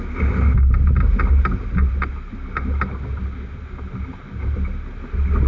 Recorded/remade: recorded